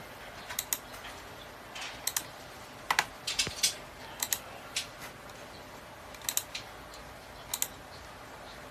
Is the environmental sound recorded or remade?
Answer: recorded